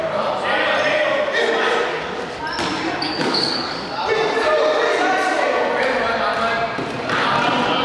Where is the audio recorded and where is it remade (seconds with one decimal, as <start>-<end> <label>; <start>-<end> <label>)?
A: 0.0-1.9 recorded; 1.9-2.4 remade; 2.4-3.1 recorded; 3.1-4.0 remade; 4.0-7.8 recorded